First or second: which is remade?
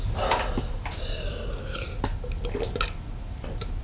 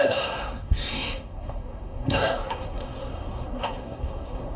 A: second